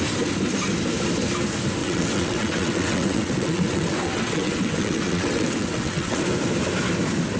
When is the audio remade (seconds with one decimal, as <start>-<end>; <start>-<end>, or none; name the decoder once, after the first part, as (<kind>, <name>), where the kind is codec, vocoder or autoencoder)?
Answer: 1.8-6.2 (vocoder, WaveNeXt)